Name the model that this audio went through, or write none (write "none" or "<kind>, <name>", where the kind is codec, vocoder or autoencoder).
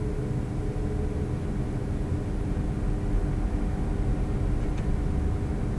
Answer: none